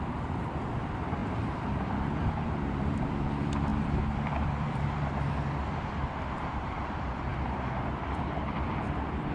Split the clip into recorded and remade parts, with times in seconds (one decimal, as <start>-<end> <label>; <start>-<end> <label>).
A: 0.0-6.0 remade; 6.0-6.5 recorded; 6.5-9.3 remade